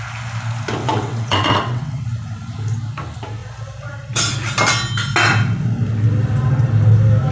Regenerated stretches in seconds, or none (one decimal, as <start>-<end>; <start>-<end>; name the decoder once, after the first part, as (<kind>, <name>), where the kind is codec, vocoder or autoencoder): 0.8-2.0 (vocoder, WaveNeXt)